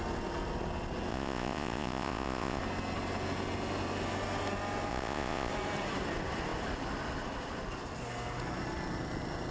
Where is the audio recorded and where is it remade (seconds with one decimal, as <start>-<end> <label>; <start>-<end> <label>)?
0.0-1.1 recorded; 1.1-2.6 remade; 2.6-4.9 recorded; 4.9-5.5 remade; 5.5-9.5 recorded